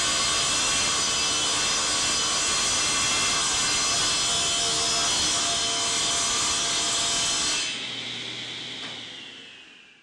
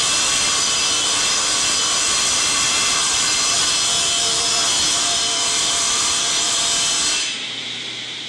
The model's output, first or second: second